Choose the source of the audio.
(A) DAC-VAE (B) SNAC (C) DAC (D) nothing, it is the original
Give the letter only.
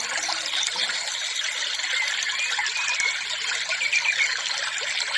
D